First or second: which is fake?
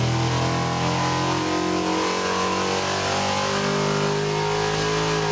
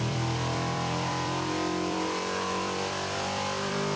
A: second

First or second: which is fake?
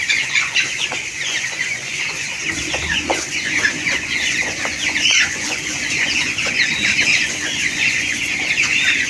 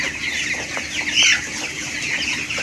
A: first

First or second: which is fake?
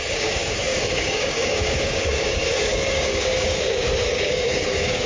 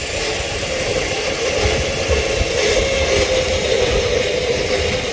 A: first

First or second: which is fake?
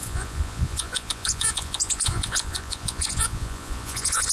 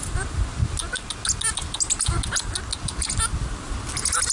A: first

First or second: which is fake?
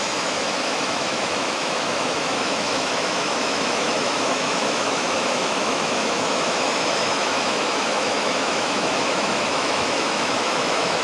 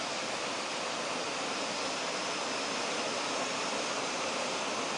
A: first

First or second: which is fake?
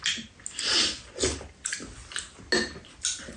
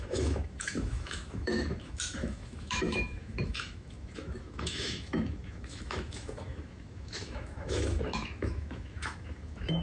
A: second